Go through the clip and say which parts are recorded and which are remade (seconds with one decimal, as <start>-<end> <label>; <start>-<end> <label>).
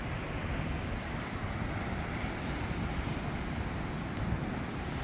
0.0-0.5 recorded; 0.5-3.1 remade; 3.1-5.0 recorded